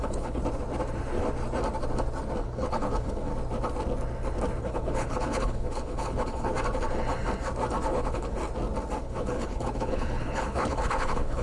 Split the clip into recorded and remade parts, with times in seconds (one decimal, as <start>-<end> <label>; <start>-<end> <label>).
0.0-0.4 remade; 0.4-2.4 recorded; 2.4-3.3 remade; 3.3-4.6 recorded; 4.6-6.5 remade; 6.5-7.9 recorded; 7.9-8.4 remade; 8.4-9.0 recorded; 9.0-11.4 remade